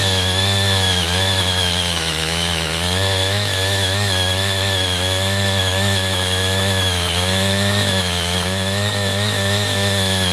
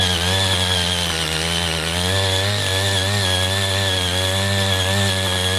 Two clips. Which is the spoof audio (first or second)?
first